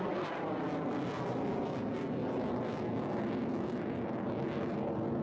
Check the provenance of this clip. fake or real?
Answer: real